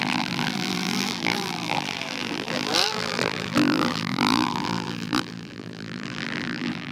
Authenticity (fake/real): fake